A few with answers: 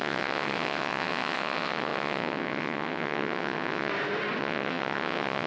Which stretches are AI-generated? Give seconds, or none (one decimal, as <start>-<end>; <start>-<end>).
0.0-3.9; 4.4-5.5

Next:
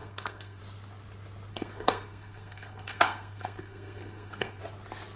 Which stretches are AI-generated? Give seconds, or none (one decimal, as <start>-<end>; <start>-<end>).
0.0-0.6; 1.5-4.6

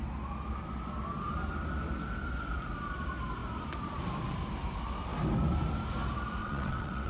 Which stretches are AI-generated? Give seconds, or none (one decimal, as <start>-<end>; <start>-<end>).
6.4-7.1

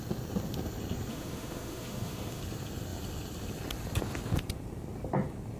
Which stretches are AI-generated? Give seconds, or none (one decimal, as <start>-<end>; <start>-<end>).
1.1-2.4